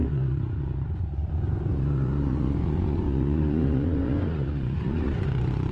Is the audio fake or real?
fake